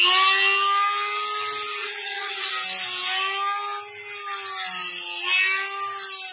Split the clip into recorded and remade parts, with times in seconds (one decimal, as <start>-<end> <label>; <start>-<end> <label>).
0.0-1.8 recorded; 1.8-2.5 remade; 2.5-6.3 recorded